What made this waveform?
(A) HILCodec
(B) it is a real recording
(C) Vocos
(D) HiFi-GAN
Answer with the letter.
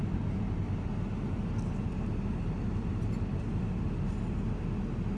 B